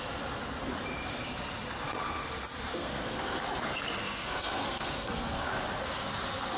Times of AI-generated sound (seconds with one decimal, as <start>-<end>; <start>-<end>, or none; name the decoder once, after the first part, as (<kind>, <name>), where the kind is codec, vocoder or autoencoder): 2.8-3.4 (codec, SNAC); 4.0-5.5